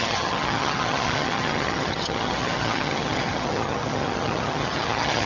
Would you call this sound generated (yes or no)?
yes